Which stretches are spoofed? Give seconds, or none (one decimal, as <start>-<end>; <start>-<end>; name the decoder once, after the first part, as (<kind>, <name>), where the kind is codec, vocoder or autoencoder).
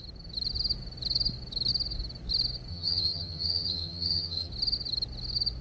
2.7-4.5 (vocoder, HiFi-GAN)